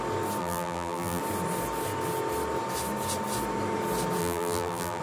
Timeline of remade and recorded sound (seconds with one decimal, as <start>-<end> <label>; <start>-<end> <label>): 0.0-0.4 recorded; 0.4-1.2 remade; 1.2-4.2 recorded; 4.2-5.0 remade